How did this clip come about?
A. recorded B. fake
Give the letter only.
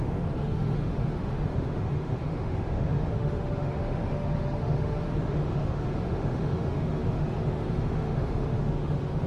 B